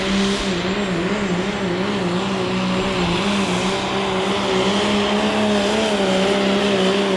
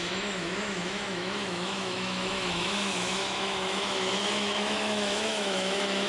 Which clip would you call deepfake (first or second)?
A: second